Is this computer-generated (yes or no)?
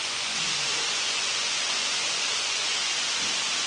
yes